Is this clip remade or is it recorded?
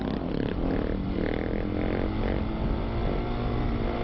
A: recorded